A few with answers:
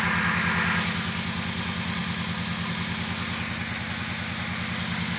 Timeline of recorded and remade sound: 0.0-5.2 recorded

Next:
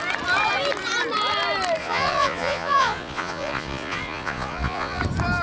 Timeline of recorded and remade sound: 0.0-1.8 recorded; 1.8-5.0 remade; 5.0-5.4 recorded